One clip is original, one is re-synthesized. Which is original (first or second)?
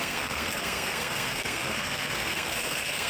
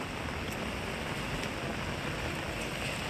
second